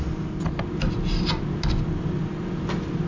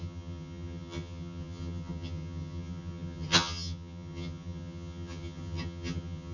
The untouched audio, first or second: first